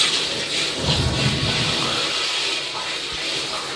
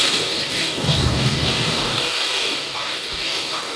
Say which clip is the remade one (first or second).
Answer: second